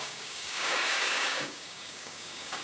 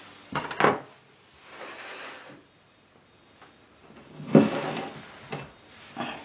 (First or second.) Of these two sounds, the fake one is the first